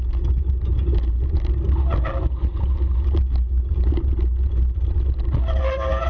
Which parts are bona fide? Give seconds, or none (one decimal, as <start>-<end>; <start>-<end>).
0.0-6.1

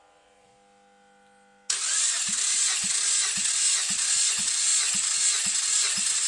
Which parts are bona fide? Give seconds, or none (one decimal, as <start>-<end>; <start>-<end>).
0.5-4.3; 4.7-6.3

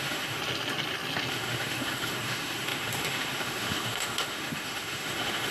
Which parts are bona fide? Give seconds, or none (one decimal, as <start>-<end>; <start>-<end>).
0.4-1.3

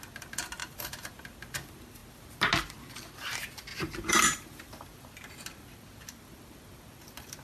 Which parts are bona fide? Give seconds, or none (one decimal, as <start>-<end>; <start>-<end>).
0.0-0.6; 1.2-3.7; 5.1-7.4

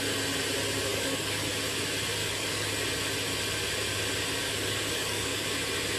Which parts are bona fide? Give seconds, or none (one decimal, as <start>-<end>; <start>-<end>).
0.0-0.9; 1.5-2.2; 2.7-4.4; 5.5-6.0